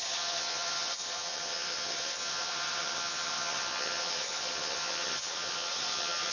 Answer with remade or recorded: remade